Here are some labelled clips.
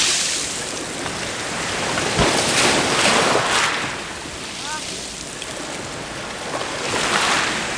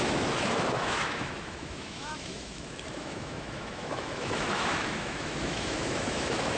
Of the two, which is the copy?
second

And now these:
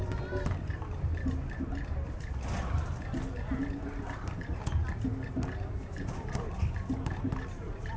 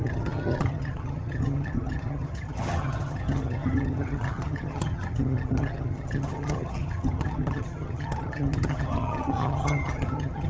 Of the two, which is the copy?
second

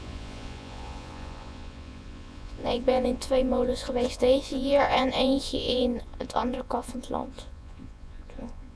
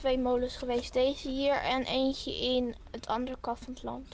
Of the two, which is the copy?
first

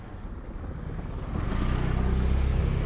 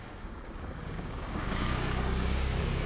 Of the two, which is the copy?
second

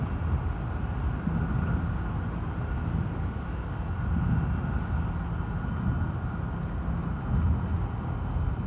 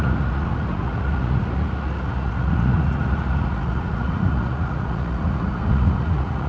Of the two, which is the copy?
second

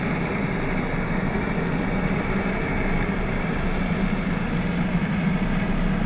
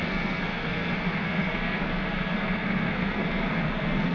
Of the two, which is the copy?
second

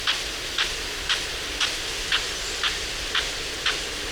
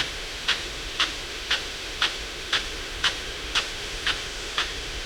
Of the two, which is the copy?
second